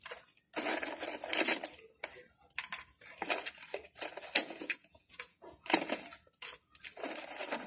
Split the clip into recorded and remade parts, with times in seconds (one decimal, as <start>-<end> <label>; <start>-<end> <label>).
0.0-4.4 recorded; 4.4-6.0 remade; 6.0-7.7 recorded